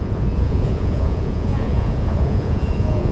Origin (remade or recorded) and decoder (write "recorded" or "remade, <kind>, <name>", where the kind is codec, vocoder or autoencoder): remade, vocoder, Vocos